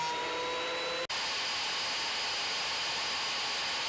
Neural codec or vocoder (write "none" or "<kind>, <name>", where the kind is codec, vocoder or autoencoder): none